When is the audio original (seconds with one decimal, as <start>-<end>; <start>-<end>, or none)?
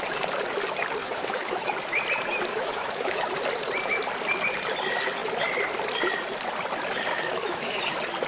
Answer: 0.0-1.0; 1.7-2.5; 3.3-7.1; 7.7-8.3